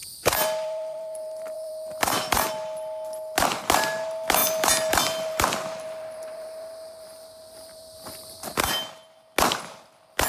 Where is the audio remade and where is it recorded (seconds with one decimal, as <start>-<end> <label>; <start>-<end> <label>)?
0.0-2.5 remade; 2.5-4.4 recorded; 4.4-8.7 remade; 8.7-10.3 recorded